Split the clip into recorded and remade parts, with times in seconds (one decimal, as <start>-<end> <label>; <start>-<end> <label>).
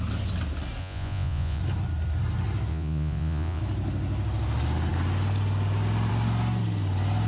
0.0-0.8 recorded; 0.8-1.6 remade; 1.6-2.7 recorded; 2.7-3.6 remade; 3.6-7.3 recorded